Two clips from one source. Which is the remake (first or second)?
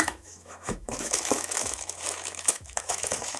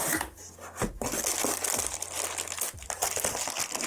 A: first